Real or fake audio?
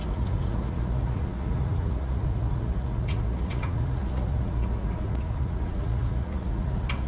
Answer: fake